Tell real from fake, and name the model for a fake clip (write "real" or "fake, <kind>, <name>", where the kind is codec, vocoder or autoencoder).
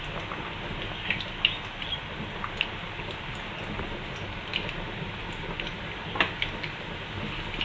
real